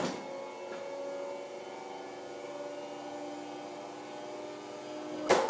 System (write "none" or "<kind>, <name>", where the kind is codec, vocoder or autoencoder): none